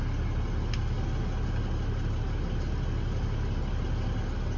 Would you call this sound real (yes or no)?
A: yes